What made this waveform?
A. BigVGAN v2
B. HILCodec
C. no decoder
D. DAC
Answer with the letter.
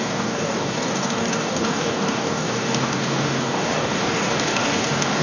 D